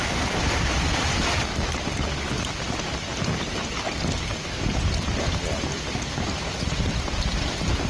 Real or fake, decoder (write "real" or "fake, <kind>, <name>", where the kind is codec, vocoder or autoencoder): real